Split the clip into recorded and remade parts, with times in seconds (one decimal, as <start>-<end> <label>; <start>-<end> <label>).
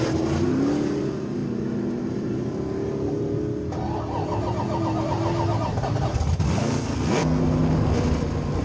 0.0-6.6 recorded; 6.6-7.4 remade; 7.4-8.6 recorded